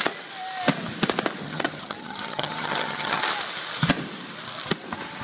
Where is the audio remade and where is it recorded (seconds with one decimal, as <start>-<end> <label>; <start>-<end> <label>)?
0.0-1.4 recorded; 1.4-3.2 remade; 3.2-5.2 recorded